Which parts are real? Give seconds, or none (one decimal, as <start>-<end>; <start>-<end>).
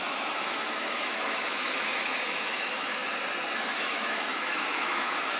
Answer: 3.0-3.7